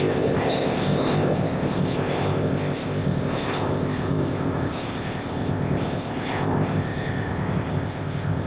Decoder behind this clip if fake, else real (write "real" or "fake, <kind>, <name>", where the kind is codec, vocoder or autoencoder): fake, codec, ZipCodec